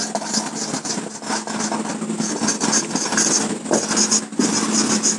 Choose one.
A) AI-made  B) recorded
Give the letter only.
B